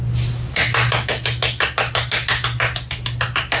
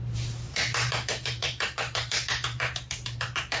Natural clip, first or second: first